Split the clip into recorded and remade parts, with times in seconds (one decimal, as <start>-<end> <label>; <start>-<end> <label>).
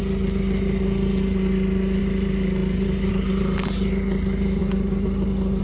0.0-5.6 recorded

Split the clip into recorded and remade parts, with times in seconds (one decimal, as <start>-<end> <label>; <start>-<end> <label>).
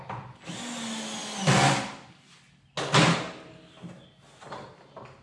0.0-5.2 recorded